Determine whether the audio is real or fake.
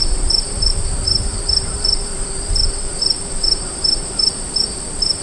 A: fake